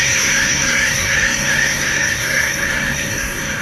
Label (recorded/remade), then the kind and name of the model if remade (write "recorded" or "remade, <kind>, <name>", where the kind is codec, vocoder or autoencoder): remade, codec, SNAC